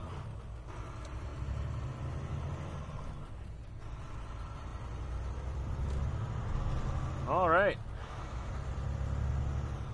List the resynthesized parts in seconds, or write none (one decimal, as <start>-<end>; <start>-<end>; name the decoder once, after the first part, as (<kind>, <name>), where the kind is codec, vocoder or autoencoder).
8.0-8.5 (autoencoder, DAC-VAE)